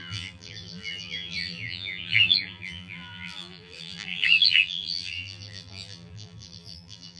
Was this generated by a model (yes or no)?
yes